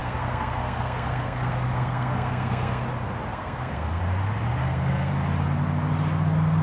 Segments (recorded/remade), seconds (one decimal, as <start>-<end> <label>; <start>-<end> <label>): 0.0-2.8 remade; 2.8-3.3 recorded; 3.3-4.0 remade; 4.0-4.6 recorded; 4.6-5.1 remade; 5.1-6.6 recorded